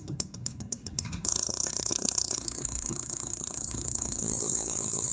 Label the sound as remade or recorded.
remade